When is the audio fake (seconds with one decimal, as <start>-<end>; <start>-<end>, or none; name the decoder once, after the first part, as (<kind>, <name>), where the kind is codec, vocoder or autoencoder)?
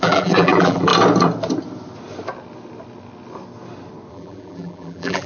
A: 0.0-0.9 (vocoder, BigVGAN v2); 4.1-5.3